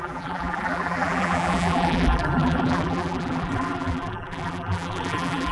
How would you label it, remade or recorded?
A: remade